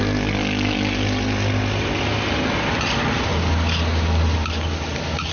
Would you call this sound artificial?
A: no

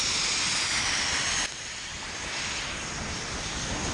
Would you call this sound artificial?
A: no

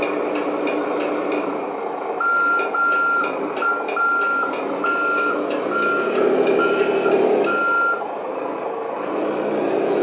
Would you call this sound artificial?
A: no